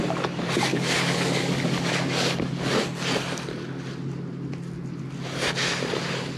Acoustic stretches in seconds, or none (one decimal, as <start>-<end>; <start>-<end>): 0.0-0.7; 2.5-6.4